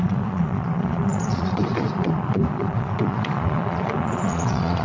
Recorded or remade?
remade